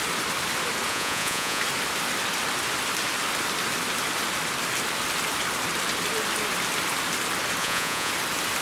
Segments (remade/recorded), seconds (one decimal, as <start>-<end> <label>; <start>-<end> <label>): 0.0-0.9 recorded; 0.9-1.6 remade; 1.6-7.6 recorded; 7.6-8.1 remade; 8.1-8.6 recorded